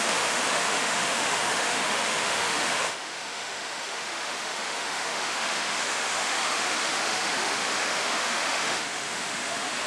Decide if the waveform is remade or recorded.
remade